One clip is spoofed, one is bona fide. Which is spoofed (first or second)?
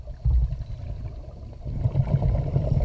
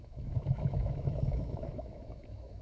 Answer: second